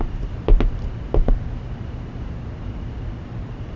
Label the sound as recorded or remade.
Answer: recorded